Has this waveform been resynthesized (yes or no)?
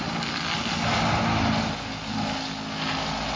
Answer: no